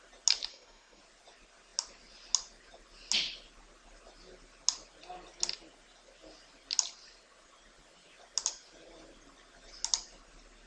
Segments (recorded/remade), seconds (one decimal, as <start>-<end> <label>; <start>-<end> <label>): 0.0-0.5 recorded; 0.5-1.0 remade; 1.0-10.7 recorded